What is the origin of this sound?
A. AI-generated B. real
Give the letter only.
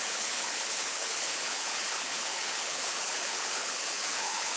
A